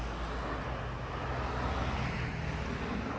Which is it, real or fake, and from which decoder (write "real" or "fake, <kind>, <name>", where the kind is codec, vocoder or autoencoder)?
real